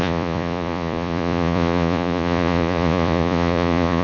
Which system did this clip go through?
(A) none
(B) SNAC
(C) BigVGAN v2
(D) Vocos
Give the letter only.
D